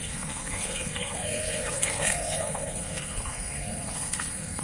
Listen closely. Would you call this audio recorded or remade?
remade